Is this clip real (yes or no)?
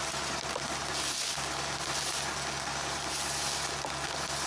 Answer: yes